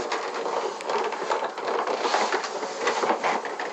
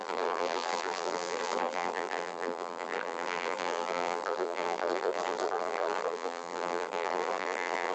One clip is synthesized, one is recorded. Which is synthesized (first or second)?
second